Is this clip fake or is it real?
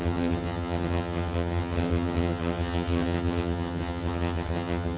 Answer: fake